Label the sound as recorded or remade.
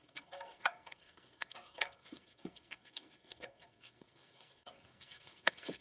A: remade